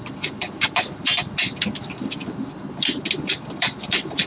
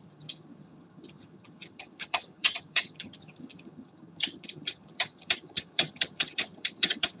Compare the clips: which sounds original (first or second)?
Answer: first